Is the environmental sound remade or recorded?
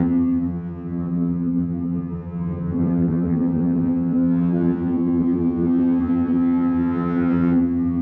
remade